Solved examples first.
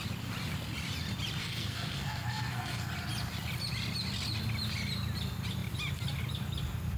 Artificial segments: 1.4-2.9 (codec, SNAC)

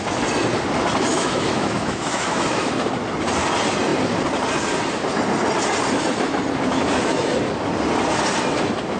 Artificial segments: 1.1-2.7 (autoencoder, DAC-VAE); 6.7-7.3

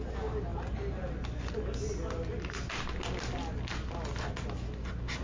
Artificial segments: none

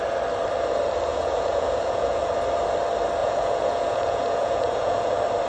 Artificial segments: 1.1-2.2 (vocoder, Vocos); 3.2-5.1

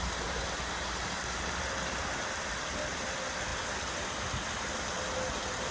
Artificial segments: none

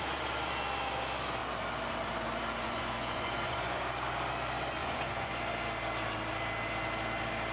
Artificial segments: 2.6-3.8 (vocoder, Vocos); 4.8-5.4